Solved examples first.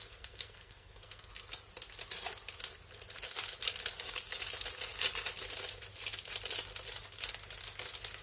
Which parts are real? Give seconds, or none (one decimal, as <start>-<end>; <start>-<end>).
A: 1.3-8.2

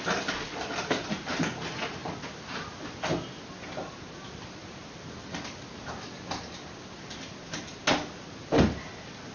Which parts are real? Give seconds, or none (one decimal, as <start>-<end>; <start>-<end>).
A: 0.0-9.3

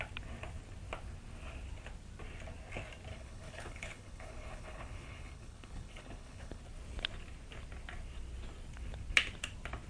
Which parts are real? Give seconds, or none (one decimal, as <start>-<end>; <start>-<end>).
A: 0.0-3.1; 6.6-9.9